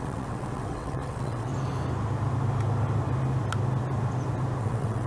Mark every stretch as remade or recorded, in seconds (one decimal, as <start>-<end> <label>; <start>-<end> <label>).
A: 0.0-1.5 remade; 1.5-4.6 recorded; 4.6-5.1 remade